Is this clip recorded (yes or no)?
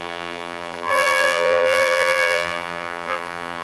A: no